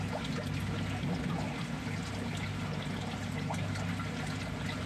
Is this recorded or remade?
recorded